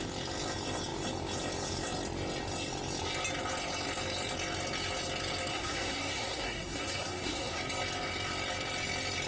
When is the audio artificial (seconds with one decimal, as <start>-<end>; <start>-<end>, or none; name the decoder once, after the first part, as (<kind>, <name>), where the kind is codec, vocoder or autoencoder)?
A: 5.5-7.6 (codec, SNAC)